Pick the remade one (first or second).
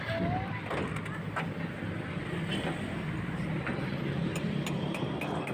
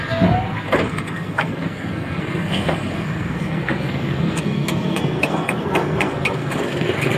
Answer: second